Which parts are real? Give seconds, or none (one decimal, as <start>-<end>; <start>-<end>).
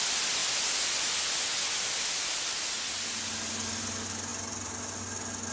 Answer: 0.0-5.5